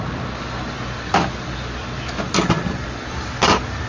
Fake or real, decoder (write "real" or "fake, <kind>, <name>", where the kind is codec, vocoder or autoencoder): real